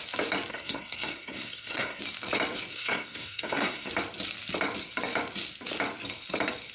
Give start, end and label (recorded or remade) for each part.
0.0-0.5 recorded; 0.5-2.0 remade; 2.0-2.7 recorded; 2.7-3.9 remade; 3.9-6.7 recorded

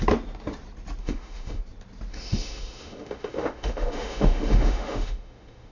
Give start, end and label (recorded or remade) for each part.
0.0-1.0 recorded; 1.0-1.6 remade; 1.6-2.1 recorded; 2.1-5.7 remade

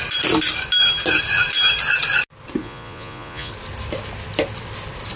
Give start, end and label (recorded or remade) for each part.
0.0-2.6 recorded; 2.6-3.5 remade; 3.5-5.2 recorded

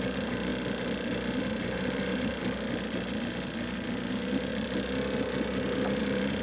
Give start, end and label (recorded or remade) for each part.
0.0-0.5 remade; 0.5-1.6 recorded; 1.6-2.4 remade; 2.4-4.1 recorded; 4.1-4.5 remade; 4.5-6.0 recorded; 6.0-6.4 remade